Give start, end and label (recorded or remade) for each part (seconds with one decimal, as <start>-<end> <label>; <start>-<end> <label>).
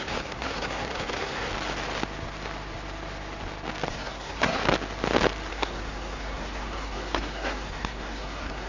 0.0-1.5 remade; 1.5-3.9 recorded; 3.9-4.6 remade; 4.6-5.5 recorded; 5.5-8.7 remade